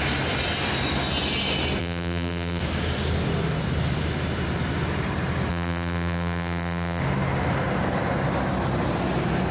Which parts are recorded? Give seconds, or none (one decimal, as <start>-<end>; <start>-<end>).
0.0-1.8; 2.6-5.5; 7.0-9.5